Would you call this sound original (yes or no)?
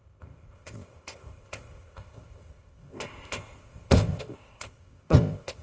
no